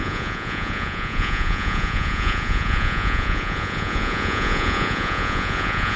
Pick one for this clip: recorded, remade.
remade